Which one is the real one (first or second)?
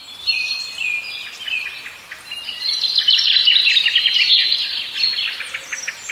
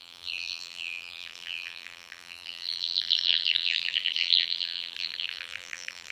first